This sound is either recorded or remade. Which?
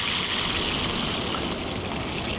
recorded